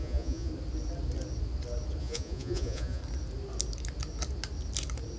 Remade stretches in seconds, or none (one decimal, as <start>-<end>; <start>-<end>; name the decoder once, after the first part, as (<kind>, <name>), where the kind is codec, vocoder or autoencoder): 0.0-0.5 (vocoder, Vocos); 2.0-3.0